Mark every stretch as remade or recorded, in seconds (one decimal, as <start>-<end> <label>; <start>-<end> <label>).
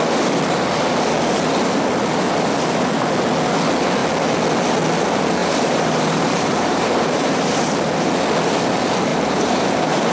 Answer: 0.0-5.4 recorded; 5.4-8.1 remade; 8.1-9.1 recorded; 9.1-10.1 remade